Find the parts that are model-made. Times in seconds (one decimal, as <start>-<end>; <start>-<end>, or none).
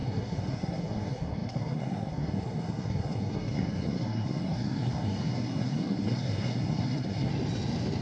0.0-7.3